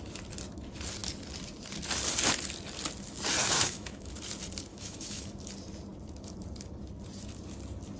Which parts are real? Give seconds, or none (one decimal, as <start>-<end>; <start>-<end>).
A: 0.0-3.4; 4.1-4.7; 5.3-8.0